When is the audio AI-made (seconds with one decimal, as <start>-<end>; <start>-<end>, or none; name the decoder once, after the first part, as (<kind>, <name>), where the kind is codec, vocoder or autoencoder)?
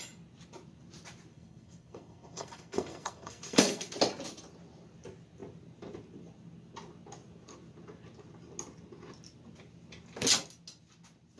1.3-3.9 (codec, SNAC)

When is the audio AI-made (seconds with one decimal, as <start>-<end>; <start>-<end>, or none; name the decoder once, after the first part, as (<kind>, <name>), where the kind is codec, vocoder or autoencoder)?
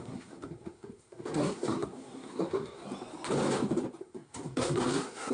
0.0-2.8 (codec, SNAC); 4.0-5.3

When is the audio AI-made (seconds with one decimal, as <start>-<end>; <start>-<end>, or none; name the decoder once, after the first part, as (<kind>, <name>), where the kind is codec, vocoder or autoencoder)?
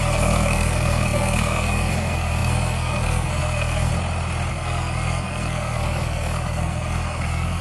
0.0-3.9 (codec, SNAC); 4.5-7.6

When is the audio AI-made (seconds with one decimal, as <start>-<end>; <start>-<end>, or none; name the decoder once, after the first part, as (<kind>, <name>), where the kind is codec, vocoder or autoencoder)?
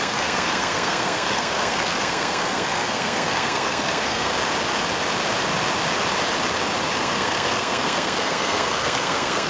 0.0-4.3 (codec, SNAC); 7.0-9.5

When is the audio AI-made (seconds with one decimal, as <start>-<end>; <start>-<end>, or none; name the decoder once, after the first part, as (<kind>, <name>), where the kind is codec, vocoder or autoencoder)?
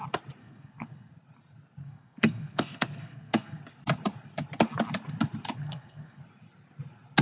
0.4-1.1 (codec, SNAC); 1.8-3.6; 5.6-6.2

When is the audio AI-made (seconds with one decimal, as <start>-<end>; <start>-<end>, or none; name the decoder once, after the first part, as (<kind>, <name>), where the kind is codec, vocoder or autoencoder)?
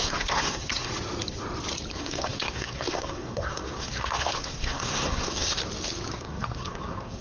0.0-0.9 (codec, SNAC); 1.9-5.6; 6.1-7.2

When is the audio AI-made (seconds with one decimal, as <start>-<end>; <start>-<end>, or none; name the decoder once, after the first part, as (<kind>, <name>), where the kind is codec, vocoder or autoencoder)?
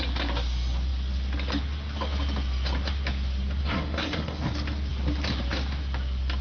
3.6-4.4 (codec, SNAC)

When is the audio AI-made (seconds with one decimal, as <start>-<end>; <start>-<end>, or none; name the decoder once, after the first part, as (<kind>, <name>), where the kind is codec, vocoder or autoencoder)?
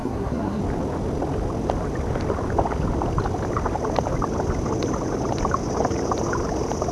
0.0-0.6 (codec, SNAC)